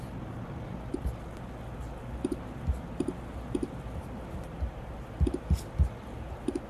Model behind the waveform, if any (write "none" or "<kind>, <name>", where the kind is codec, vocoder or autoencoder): none